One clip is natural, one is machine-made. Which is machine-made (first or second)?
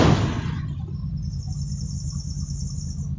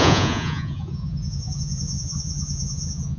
second